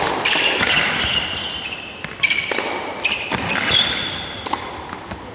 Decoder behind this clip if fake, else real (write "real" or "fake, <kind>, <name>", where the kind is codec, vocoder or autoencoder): fake, vocoder, BigVGAN v2